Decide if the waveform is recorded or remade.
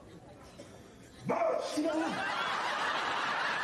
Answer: recorded